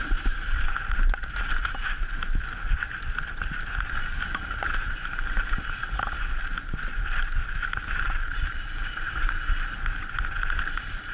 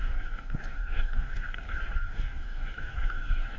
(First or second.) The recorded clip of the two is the first